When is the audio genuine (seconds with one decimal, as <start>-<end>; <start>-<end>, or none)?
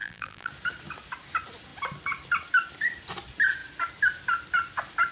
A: 0.5-5.1